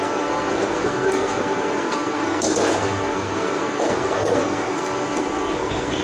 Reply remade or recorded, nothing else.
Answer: remade